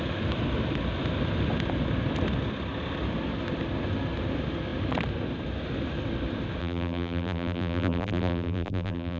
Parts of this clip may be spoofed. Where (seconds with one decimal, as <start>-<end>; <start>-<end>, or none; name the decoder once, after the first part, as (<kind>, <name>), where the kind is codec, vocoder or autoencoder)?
6.6-9.2 (vocoder, BigVGAN v2)